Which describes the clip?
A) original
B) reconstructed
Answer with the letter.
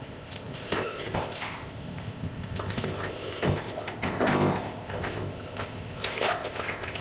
B